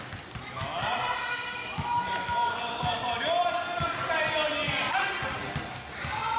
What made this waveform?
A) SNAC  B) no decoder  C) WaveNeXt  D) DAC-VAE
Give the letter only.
B